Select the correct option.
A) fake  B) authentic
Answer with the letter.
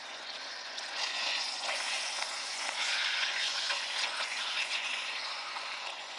A